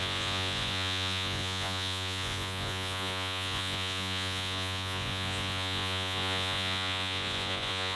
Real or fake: fake